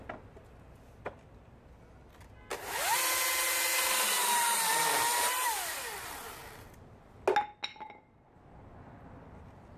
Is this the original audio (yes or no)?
yes